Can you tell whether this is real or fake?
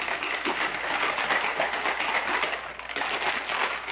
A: real